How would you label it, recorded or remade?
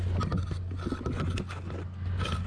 recorded